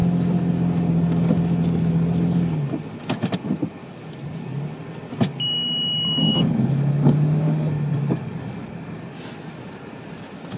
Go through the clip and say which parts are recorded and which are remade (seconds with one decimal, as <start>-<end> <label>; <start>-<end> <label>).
0.0-6.2 recorded; 6.2-9.0 remade; 9.0-10.6 recorded